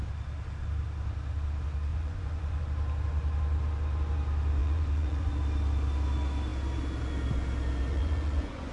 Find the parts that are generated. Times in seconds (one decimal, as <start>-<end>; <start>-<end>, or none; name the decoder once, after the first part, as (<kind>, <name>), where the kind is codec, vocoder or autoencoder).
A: 1.9-2.6 (vocoder, Vocos); 4.6-5.3; 7.9-8.7